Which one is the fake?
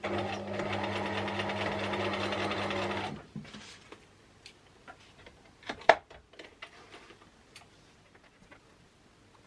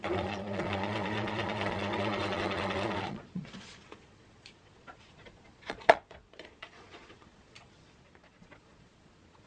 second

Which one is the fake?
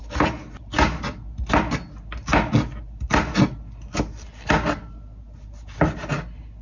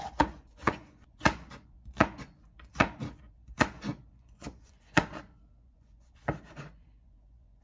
second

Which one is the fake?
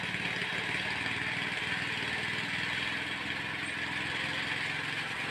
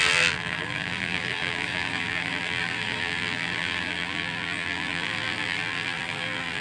second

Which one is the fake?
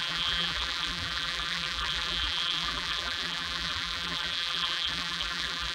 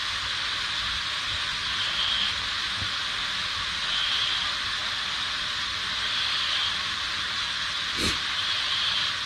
first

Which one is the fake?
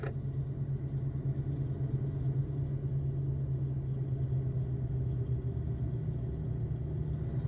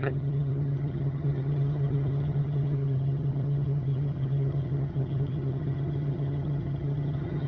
second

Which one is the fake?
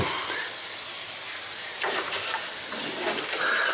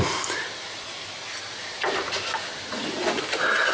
first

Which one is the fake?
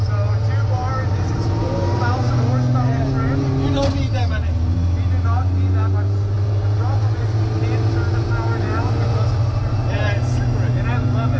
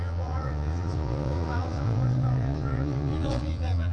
second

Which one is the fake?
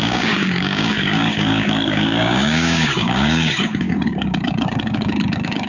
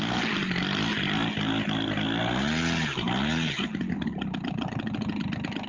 first